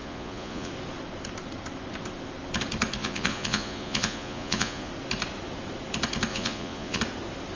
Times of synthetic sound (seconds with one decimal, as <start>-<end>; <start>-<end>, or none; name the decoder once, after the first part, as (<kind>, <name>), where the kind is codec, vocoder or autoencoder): 0.0-0.7 (vocoder, Vocos); 3.0-4.9; 6.3-7.0